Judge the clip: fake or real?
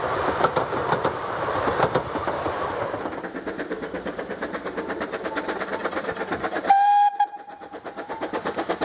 fake